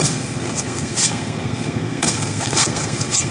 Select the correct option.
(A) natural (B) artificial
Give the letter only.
B